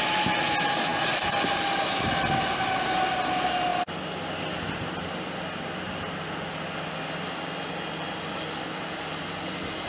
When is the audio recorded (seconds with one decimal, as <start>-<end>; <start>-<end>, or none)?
0.0-9.9